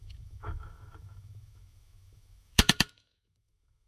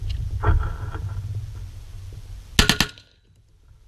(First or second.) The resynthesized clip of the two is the first